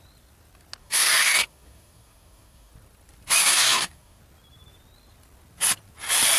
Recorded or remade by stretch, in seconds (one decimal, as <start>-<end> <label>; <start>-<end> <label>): 0.0-0.8 recorded; 0.8-2.7 remade; 2.7-3.4 recorded; 3.4-4.2 remade; 4.2-6.4 recorded